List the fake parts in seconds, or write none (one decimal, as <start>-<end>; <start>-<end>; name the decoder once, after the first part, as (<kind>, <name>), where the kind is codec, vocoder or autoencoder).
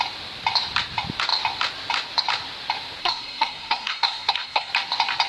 3.0-4.7 (codec, SNAC)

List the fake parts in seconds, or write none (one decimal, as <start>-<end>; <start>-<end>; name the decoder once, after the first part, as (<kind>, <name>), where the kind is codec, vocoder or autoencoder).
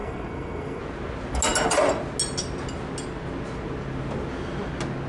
0.0-0.8 (codec, SNAC)